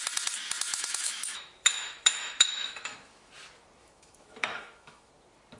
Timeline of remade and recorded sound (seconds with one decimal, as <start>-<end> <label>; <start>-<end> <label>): 0.0-0.7 recorded; 0.7-3.3 remade; 3.3-3.8 recorded; 3.8-5.1 remade; 5.1-5.6 recorded